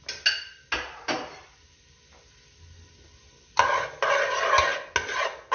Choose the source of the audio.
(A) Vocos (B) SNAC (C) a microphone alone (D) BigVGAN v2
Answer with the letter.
C